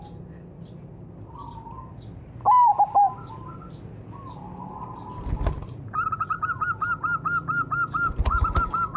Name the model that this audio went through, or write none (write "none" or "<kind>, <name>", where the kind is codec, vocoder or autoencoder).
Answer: none